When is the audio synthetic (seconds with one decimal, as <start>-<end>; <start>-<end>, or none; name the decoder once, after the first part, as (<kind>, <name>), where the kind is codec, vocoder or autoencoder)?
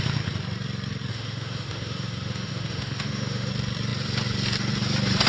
1.1-3.5 (autoencoder, DAC-VAE)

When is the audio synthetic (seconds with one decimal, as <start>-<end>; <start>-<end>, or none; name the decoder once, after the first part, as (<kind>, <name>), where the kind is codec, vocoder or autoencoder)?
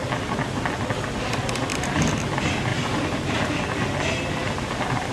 none